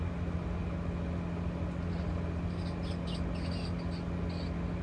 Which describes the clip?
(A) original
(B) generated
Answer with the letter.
A